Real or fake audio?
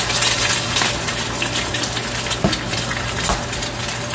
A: real